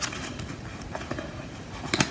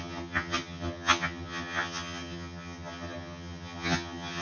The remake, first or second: second